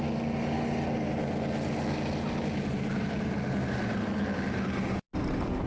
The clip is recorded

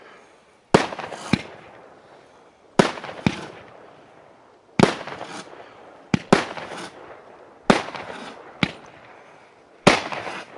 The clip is recorded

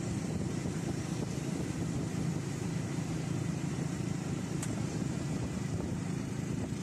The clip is remade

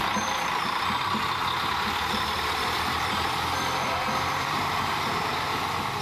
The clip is remade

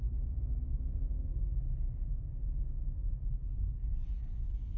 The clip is recorded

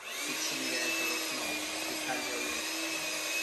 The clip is recorded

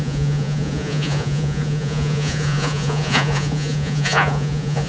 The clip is remade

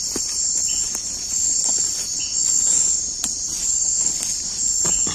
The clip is recorded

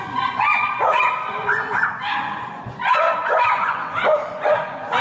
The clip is remade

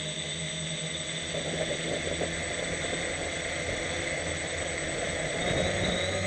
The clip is recorded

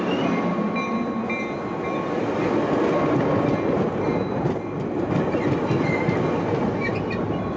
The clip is recorded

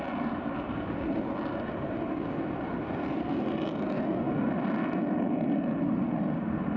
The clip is recorded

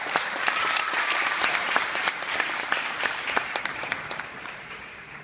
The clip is remade